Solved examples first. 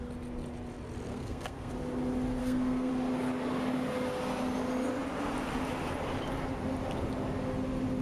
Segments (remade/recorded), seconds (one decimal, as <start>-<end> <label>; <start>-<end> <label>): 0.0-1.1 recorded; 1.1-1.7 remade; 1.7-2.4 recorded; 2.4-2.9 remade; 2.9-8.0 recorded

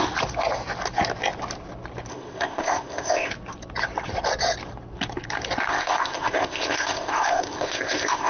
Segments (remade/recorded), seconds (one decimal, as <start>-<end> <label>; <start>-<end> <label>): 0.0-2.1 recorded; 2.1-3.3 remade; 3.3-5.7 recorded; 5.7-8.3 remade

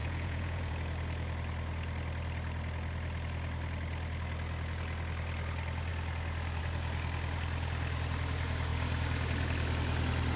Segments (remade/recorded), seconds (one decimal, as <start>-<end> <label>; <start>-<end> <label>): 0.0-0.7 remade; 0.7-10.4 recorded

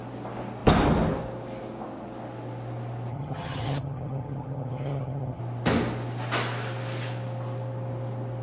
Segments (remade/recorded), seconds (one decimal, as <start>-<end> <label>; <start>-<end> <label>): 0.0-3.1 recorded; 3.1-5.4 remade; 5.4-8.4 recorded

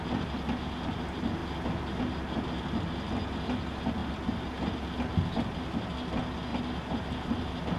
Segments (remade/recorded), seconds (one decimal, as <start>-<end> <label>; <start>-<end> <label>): 0.0-7.8 recorded